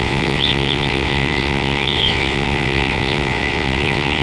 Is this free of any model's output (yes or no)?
no